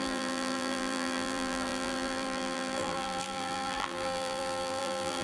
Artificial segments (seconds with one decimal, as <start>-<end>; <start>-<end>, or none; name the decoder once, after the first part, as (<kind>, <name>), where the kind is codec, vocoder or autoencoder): 0.0-5.2 (vocoder, BigVGAN v2)